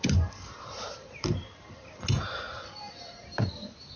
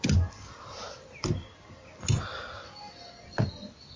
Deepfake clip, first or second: first